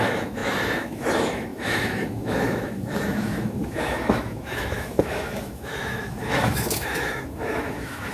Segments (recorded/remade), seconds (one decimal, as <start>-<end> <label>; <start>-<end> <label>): 0.0-8.1 remade